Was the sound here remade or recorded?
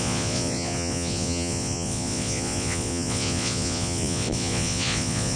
remade